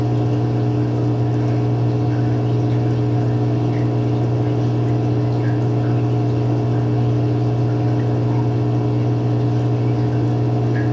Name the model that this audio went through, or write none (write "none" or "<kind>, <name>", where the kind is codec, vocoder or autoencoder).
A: none